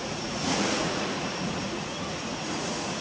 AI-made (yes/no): yes